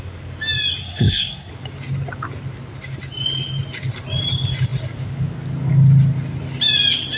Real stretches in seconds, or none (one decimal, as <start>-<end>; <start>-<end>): 0.0-0.8; 1.5-7.2